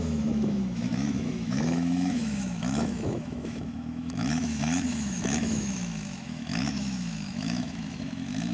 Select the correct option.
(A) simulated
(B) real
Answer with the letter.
A